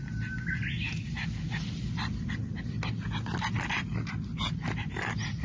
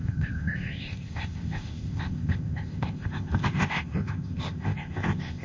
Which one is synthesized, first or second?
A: second